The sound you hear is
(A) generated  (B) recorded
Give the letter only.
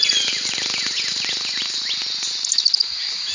B